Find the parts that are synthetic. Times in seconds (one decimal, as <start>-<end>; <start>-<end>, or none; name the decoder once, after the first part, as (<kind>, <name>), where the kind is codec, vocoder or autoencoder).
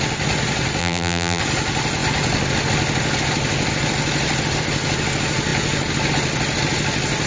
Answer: 0.8-1.4 (vocoder, BigVGAN v2)